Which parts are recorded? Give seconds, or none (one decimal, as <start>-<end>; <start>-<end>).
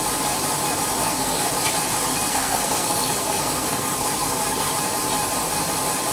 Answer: 0.0-1.0; 1.5-2.1; 4.7-6.1